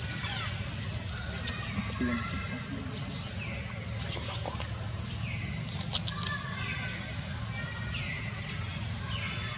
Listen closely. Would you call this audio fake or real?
real